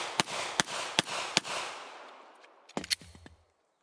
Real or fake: real